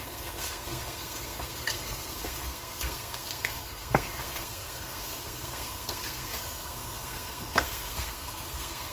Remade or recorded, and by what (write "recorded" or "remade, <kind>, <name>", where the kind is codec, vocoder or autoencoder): remade, codec, SNAC